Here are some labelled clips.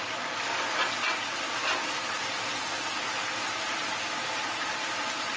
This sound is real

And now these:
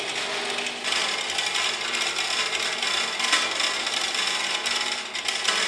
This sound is real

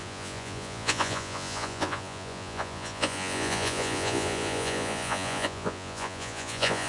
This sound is fake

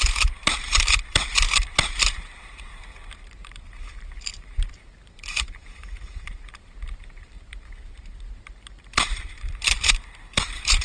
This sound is fake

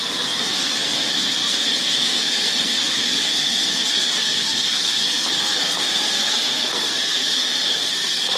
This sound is fake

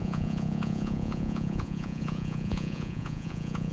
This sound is fake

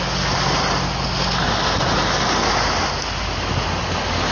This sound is real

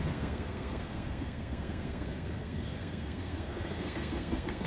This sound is fake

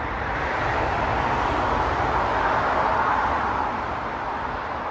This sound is real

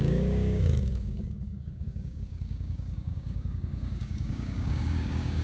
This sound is fake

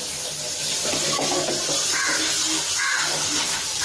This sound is real